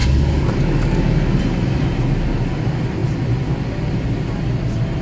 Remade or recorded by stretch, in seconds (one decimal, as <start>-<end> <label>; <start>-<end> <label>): 0.0-1.0 remade; 1.0-5.0 recorded